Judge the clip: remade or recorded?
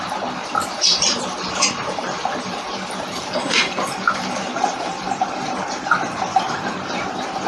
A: remade